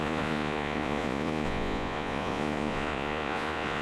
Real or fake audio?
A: fake